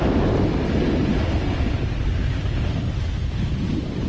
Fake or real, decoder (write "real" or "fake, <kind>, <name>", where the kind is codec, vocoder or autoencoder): real